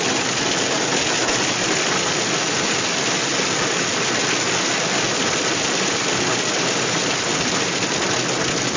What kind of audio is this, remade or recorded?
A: recorded